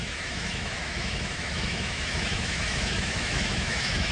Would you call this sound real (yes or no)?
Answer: no